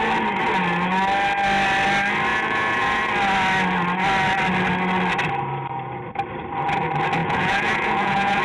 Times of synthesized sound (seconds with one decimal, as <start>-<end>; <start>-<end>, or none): 2.3-3.1; 7.2-8.4